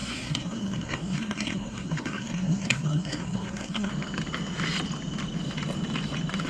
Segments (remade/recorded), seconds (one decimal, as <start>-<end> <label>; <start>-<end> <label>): 0.0-3.9 remade; 3.9-6.5 recorded